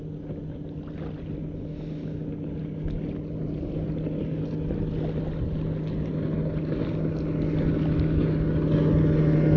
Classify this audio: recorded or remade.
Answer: recorded